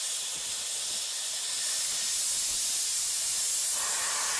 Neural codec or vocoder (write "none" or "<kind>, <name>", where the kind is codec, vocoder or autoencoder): none